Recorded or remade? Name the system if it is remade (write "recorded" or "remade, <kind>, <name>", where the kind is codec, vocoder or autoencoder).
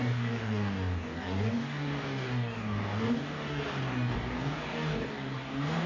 remade, codec, DAC